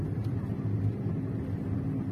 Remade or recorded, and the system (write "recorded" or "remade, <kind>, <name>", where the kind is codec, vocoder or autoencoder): recorded